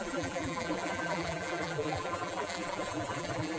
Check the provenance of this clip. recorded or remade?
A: remade